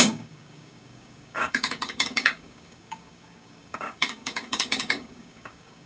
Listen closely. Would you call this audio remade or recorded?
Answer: remade